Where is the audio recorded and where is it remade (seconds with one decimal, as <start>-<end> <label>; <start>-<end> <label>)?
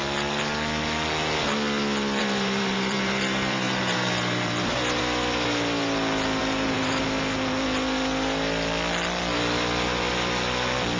0.0-2.2 recorded; 2.2-5.0 remade; 5.0-6.4 recorded; 6.4-7.0 remade; 7.0-11.0 recorded